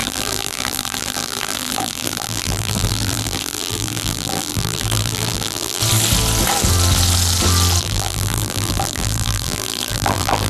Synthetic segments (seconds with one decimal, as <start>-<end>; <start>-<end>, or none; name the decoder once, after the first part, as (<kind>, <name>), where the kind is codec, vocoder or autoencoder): 0.0-5.8 (vocoder, BigVGAN v2); 7.8-10.5